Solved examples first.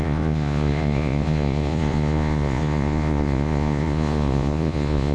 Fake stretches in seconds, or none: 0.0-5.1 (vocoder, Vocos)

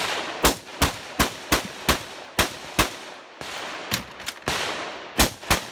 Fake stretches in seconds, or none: none

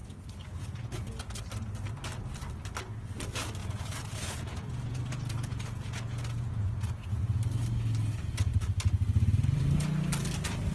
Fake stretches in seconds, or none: 0.0-1.4 (vocoder, Vocos); 3.6-7.2

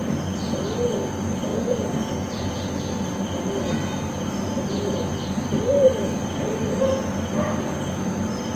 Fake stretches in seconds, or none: 1.5-2.7 (vocoder, Vocos)

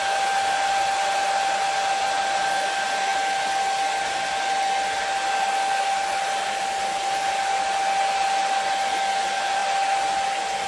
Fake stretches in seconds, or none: none

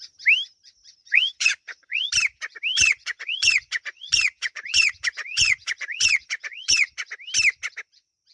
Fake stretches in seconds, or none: 1.0-2.1 (vocoder, Vocos); 2.7-7.1